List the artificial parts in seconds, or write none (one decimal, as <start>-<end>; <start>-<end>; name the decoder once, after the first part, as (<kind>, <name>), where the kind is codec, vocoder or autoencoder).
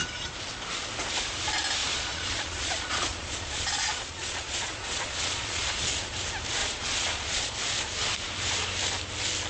1.8-6.1 (vocoder, Vocos); 6.6-7.5